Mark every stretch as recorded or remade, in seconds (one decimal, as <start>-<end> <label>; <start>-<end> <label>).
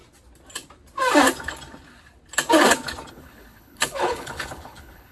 0.0-3.1 recorded; 3.1-5.1 remade